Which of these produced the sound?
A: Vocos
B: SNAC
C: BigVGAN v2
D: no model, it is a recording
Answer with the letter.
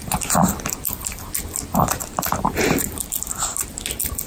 D